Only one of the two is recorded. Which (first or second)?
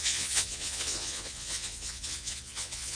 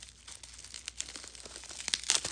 second